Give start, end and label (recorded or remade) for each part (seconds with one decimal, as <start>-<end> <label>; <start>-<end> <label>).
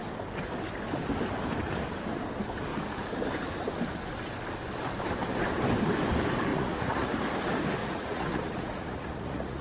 0.0-6.5 recorded; 6.5-7.1 remade; 7.1-7.8 recorded; 7.8-9.6 remade